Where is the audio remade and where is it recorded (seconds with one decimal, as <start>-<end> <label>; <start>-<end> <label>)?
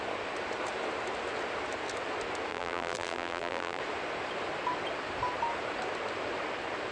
0.0-2.5 recorded; 2.5-3.8 remade; 3.8-6.9 recorded